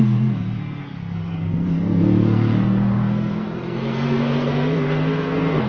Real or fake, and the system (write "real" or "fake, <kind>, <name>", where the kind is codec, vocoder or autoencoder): fake, codec, SNAC